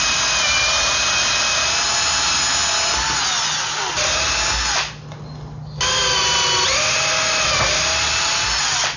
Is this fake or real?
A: real